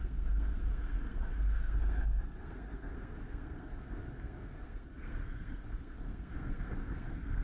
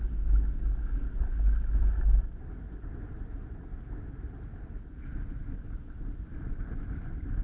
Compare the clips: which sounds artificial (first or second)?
first